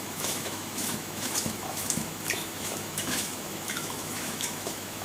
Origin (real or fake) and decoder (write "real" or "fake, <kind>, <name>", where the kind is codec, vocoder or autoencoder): fake, autoencoder, DAC-VAE